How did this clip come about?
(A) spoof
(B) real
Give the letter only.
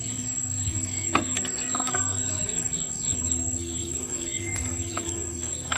A